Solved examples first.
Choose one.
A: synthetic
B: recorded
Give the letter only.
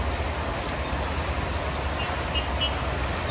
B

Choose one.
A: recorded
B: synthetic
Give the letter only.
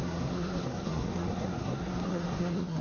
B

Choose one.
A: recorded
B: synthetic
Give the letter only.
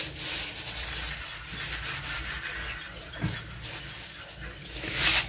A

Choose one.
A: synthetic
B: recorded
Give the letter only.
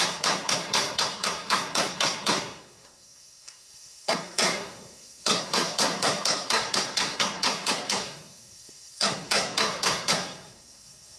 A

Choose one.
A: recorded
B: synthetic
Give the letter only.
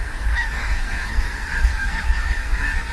B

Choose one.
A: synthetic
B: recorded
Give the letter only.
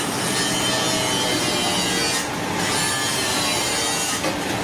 B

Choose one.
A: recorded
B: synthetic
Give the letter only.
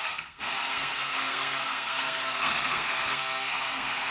B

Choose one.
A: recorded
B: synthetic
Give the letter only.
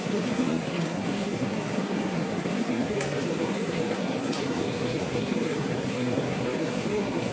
B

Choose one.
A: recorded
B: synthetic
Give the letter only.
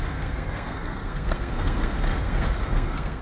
B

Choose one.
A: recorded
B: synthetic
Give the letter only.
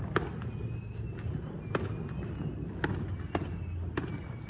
A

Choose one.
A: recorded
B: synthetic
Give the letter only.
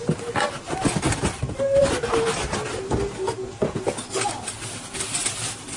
A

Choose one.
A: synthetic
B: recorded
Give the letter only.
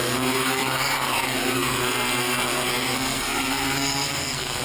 A